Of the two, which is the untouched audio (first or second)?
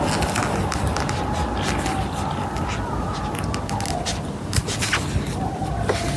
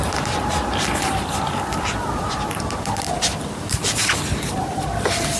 first